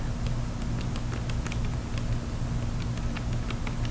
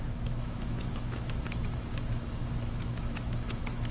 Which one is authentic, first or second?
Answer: first